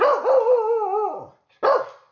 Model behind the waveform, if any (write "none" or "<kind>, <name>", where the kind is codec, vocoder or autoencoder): none